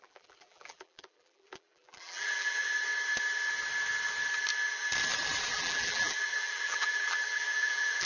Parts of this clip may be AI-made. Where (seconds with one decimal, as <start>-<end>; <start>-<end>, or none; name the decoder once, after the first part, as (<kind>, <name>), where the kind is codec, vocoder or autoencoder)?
0.0-2.7 (vocoder, BigVGAN v2); 5.5-8.1